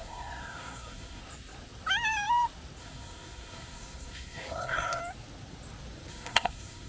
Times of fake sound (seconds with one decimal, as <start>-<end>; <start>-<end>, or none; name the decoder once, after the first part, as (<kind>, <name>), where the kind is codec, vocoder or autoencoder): 0.0-1.2 (codec, SNAC); 2.8-5.0; 6.1-6.9